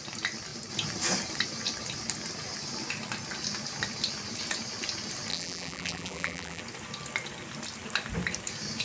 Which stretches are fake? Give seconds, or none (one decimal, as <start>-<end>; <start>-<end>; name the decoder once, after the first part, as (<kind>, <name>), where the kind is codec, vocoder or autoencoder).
5.3-6.6 (vocoder, BigVGAN v2)